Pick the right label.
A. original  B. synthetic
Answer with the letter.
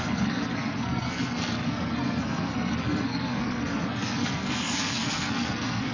B